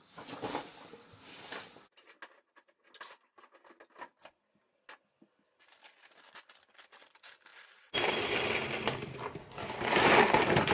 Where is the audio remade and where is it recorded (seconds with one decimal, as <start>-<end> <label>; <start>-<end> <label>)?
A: 0.0-10.7 recorded